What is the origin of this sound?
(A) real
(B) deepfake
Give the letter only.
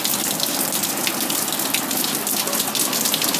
A